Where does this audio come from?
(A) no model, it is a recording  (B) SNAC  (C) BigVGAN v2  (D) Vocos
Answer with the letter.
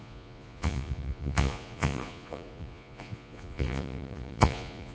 D